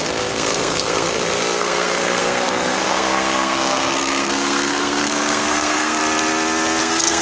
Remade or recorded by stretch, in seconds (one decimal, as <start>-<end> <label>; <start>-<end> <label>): 0.0-6.0 remade; 6.0-6.8 recorded; 6.8-7.2 remade

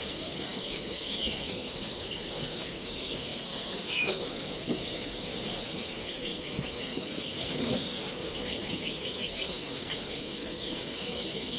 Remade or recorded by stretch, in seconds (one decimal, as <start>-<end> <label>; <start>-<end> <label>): 0.0-11.6 remade

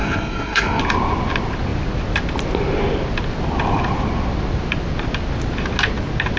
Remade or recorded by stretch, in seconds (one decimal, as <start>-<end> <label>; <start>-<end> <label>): 0.0-0.8 remade; 0.8-6.4 recorded

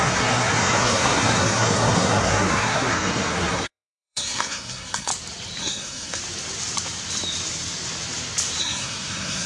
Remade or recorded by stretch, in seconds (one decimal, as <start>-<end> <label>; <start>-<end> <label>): 0.0-5.1 remade; 5.1-5.6 recorded; 5.6-6.2 remade; 6.2-8.6 recorded; 8.6-9.5 remade

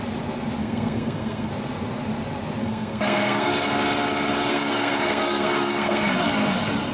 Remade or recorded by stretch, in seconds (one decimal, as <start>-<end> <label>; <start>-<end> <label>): 0.0-0.6 recorded; 0.6-1.5 remade; 1.5-2.6 recorded; 2.6-3.5 remade; 3.5-4.5 recorded; 4.5-6.1 remade; 6.1-6.9 recorded

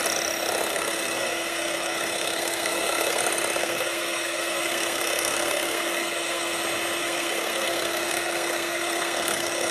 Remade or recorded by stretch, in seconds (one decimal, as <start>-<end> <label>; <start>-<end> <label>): 0.0-0.7 recorded; 0.7-3.2 remade; 3.2-3.6 recorded; 3.6-6.6 remade; 6.6-7.0 recorded; 7.0-9.7 remade

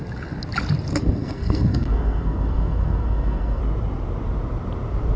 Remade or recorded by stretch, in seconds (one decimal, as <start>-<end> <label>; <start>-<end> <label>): 0.0-1.0 recorded; 1.0-3.6 remade; 3.6-5.2 recorded

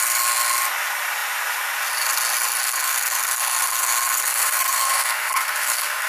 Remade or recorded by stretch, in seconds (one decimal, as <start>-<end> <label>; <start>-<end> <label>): 0.0-2.6 recorded; 2.6-6.1 remade